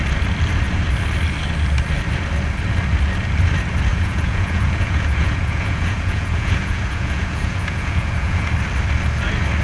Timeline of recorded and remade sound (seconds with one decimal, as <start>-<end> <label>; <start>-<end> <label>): 0.0-3.9 recorded; 3.9-8.5 remade; 8.5-9.6 recorded